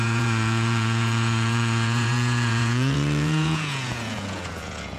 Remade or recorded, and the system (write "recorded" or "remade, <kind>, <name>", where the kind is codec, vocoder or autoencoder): remade, vocoder, Vocos